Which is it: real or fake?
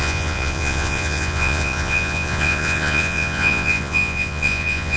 fake